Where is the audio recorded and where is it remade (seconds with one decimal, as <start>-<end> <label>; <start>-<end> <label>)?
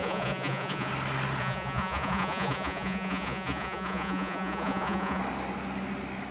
0.0-0.9 remade; 0.9-1.4 recorded; 1.4-5.2 remade; 5.2-6.3 recorded